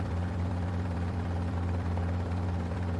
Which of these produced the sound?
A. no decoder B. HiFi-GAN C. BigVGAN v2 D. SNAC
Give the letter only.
C